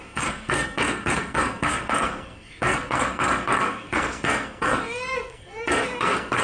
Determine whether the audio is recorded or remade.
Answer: remade